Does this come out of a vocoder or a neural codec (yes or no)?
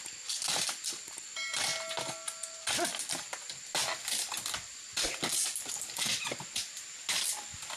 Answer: no